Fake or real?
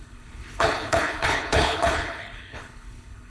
fake